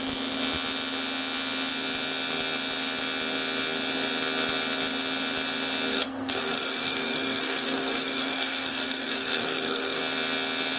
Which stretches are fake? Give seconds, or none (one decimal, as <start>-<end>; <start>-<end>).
5.9-10.0